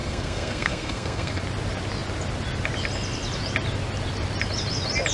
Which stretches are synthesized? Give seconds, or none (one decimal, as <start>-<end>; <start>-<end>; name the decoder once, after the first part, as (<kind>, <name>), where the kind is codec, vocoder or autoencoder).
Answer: 0.0-1.4 (codec, SNAC)